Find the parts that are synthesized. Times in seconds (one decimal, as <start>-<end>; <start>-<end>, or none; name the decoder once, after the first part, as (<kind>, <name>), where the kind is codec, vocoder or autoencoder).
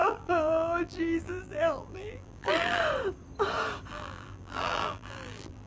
0.0-2.8 (vocoder, BigVGAN v2); 3.9-5.7